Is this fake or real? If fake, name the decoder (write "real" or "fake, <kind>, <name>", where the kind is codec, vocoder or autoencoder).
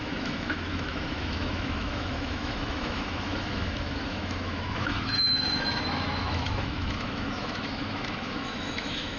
fake, autoencoder, DAC-VAE